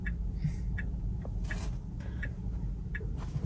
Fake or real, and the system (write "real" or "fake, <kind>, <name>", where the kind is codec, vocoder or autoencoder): real